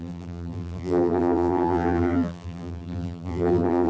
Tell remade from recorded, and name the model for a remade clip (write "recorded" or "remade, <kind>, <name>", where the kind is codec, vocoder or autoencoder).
remade, vocoder, BigVGAN v2